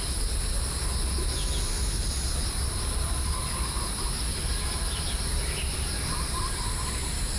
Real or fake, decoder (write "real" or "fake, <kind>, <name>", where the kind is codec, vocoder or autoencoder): real